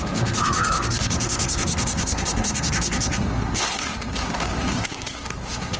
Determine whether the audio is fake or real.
fake